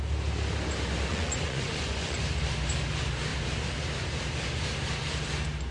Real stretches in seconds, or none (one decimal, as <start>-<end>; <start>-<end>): 0.0-1.1; 2.2-5.7